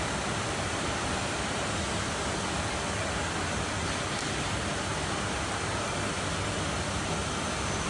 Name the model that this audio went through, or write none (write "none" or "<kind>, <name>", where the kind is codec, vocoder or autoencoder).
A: none